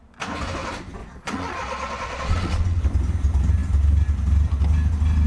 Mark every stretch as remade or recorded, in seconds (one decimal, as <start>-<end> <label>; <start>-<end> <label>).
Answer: 0.0-1.0 recorded; 1.0-2.8 remade; 2.8-5.3 recorded